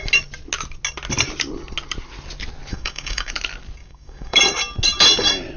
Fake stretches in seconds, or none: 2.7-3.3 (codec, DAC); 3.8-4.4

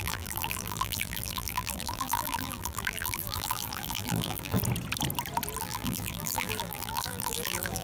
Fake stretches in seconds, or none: 0.0-4.6 (vocoder, BigVGAN v2); 5.6-7.8

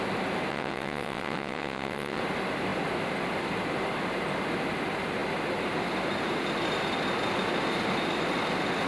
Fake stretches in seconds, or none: 0.5-2.2 (vocoder, WaveNeXt)

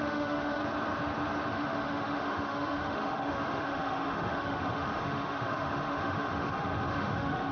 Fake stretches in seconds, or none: 0.0-0.6 (autoencoder, DAC-VAE); 1.5-7.5

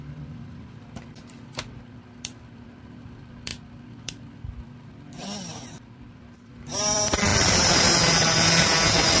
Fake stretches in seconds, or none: 0.0-7.3 (vocoder, BigVGAN v2)

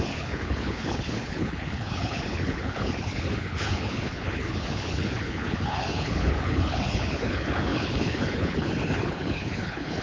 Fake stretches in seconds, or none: 0.0-10.0 (codec, HILCodec)